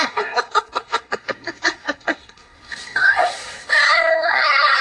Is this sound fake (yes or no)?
yes